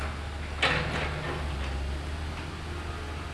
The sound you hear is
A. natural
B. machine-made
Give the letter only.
A